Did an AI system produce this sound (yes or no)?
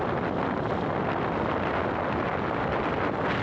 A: no